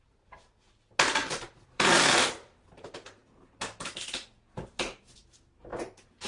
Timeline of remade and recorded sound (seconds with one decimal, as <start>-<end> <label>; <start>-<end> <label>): 0.0-1.2 recorded; 1.2-2.6 remade; 2.6-6.3 recorded